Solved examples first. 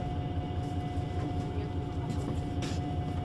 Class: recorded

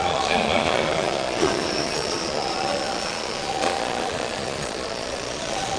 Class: remade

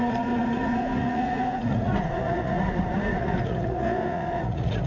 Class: remade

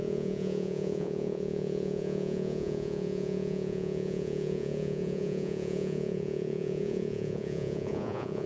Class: remade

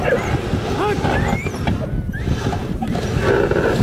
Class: recorded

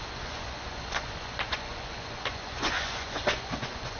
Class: remade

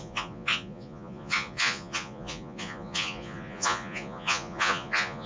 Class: remade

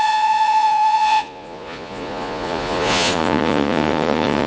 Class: remade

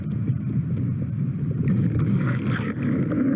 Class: recorded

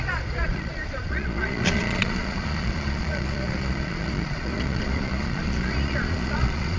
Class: remade